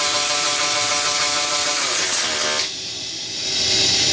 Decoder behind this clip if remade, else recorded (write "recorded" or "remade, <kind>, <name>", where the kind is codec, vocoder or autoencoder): recorded